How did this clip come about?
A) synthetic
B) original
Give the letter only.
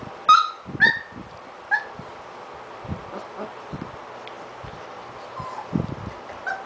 B